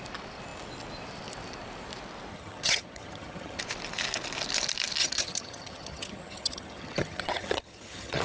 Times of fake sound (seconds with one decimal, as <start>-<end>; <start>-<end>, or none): 2.3-3.6; 5.0-8.2